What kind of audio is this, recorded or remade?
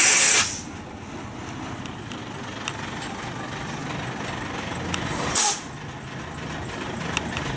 recorded